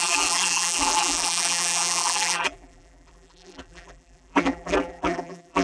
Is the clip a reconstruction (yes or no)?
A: yes